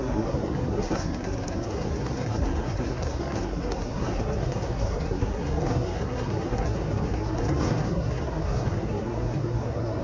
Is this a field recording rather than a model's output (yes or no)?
no